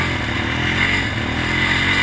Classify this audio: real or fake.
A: real